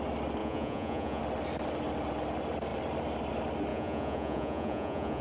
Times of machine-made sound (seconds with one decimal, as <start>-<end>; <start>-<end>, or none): 0.4-1.2; 3.7-5.2